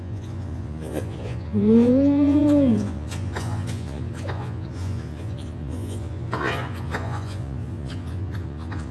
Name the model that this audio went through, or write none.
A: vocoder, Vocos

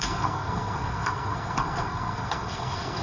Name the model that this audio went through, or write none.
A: codec, SNAC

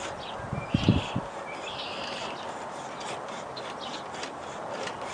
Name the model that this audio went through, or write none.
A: none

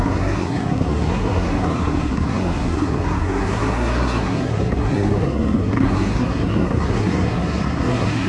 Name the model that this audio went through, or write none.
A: codec, SNAC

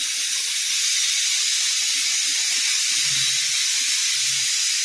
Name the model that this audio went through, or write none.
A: none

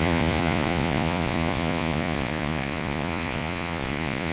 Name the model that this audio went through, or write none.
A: vocoder, Vocos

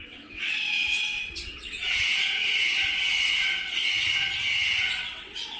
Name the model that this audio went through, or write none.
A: vocoder, WaveNeXt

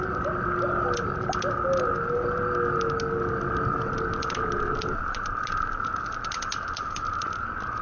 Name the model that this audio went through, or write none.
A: none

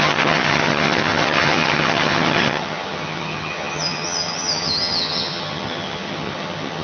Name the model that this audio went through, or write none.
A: vocoder, HiFi-GAN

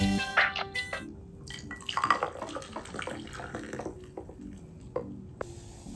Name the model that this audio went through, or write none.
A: none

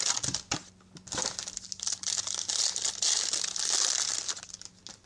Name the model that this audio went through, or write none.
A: none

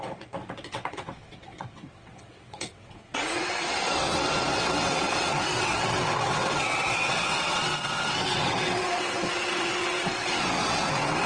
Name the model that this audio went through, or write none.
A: vocoder, WaveNeXt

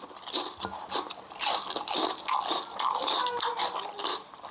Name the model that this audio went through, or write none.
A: none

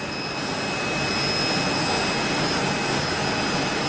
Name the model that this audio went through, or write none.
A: none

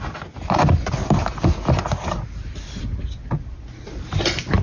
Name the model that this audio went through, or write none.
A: none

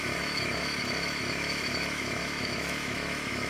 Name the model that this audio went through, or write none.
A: autoencoder, DAC-VAE